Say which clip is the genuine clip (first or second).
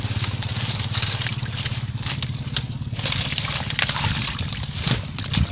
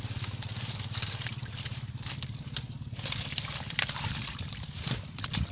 first